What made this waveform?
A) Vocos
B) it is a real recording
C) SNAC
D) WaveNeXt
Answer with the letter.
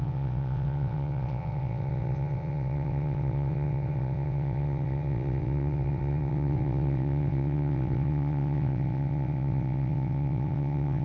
D